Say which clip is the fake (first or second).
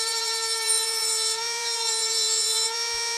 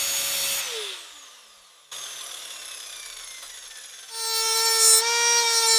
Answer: first